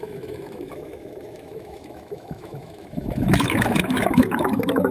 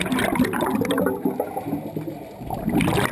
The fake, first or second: first